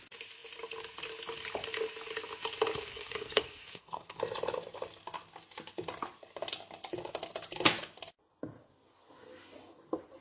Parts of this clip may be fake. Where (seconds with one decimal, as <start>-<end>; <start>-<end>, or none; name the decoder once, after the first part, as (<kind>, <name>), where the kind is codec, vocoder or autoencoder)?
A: 2.9-4.2 (codec, SNAC)